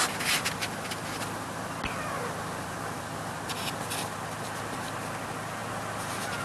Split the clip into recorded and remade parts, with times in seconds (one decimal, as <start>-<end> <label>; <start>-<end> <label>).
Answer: 0.0-6.4 recorded